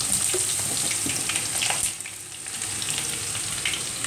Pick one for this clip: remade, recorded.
recorded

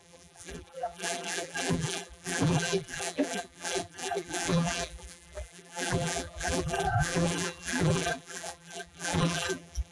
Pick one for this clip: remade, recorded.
remade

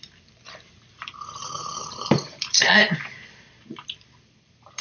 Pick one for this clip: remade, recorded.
remade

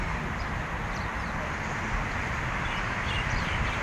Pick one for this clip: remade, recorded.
remade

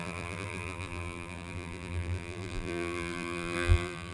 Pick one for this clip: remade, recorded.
remade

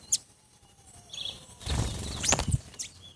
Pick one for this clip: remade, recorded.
remade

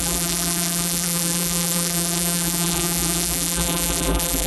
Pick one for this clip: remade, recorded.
remade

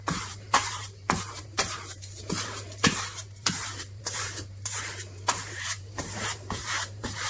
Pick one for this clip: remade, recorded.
remade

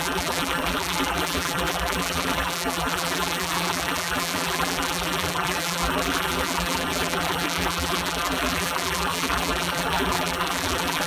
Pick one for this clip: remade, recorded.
remade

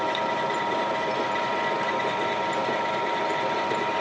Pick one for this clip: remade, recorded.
remade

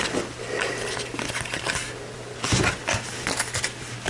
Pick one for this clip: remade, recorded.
recorded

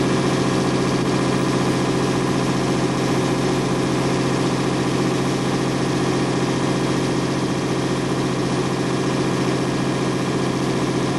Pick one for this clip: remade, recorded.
recorded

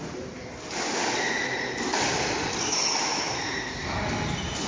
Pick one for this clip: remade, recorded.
recorded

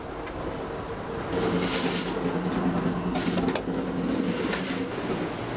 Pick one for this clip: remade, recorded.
recorded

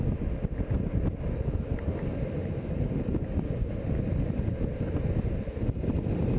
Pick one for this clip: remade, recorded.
recorded